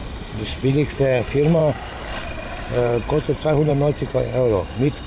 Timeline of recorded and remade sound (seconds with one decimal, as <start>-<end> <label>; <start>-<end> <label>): 0.0-1.6 remade; 1.6-2.1 recorded; 2.1-5.1 remade